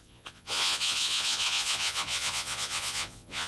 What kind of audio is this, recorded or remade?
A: remade